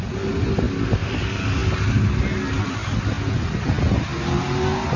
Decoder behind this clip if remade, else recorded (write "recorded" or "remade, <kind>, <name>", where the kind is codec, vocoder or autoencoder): recorded